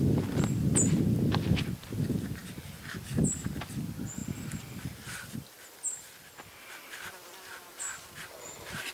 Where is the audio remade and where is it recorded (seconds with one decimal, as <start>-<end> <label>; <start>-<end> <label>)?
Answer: 0.0-8.9 recorded